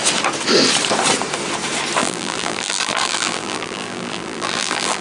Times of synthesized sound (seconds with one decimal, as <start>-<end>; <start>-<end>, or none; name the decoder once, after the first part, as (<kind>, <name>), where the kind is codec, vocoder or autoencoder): 2.0-5.0 (vocoder, BigVGAN v2)